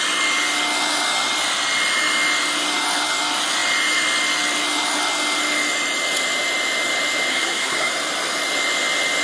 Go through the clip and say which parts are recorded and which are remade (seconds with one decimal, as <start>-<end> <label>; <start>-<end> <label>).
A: 0.0-7.3 recorded; 7.3-7.9 remade; 7.9-9.2 recorded